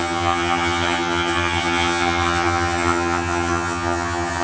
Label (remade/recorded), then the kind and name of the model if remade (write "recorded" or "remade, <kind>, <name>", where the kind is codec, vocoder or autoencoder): remade, vocoder, HiFi-GAN